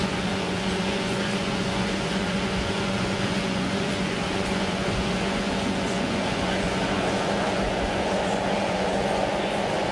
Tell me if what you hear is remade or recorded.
remade